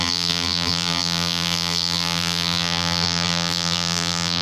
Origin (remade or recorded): remade